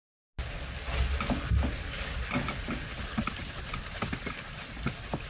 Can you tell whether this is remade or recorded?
recorded